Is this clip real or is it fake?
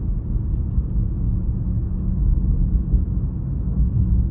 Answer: fake